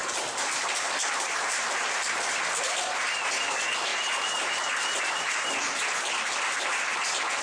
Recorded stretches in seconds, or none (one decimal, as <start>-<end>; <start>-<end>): 3.0-3.9; 5.5-7.4